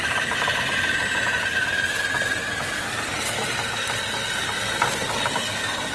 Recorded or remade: recorded